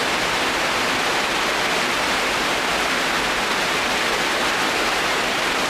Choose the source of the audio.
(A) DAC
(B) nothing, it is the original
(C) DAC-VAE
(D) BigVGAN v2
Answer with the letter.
B